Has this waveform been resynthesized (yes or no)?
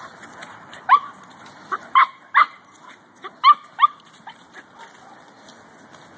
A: no